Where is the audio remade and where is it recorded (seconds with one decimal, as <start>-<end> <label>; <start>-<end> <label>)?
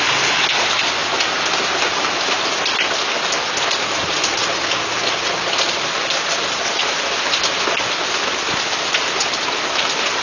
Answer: 0.0-10.2 recorded